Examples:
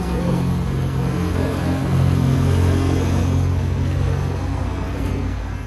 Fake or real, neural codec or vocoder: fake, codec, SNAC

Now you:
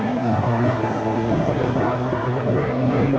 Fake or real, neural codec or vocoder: fake, codec, SNAC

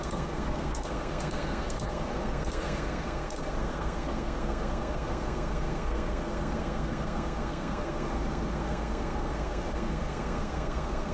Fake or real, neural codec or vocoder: fake, codec, SNAC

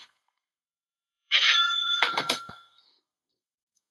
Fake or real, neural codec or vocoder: fake, codec, SNAC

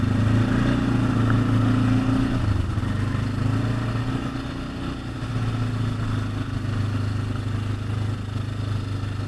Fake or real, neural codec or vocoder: real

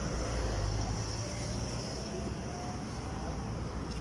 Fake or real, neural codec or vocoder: real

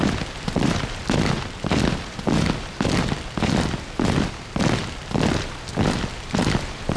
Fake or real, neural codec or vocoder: real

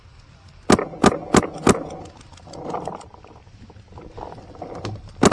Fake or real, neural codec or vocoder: real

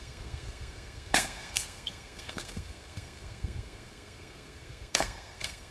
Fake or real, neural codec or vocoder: fake, codec, SNAC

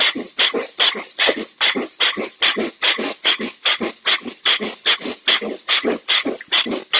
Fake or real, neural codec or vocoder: real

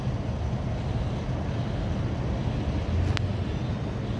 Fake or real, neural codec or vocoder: real